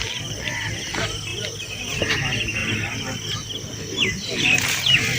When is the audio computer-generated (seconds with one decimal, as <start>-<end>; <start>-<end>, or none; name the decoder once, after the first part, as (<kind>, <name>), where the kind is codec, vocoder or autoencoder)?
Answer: 2.6-3.8 (vocoder, BigVGAN v2)